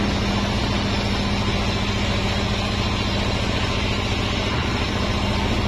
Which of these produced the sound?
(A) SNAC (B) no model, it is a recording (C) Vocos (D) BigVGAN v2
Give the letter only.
B